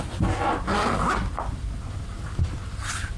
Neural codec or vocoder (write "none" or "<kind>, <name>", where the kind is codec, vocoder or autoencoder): none